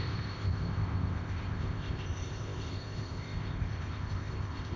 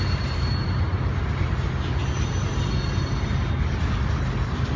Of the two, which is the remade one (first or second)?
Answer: first